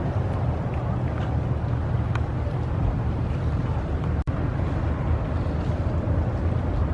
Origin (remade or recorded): recorded